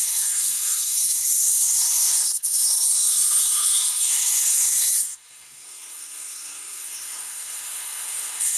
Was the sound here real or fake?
fake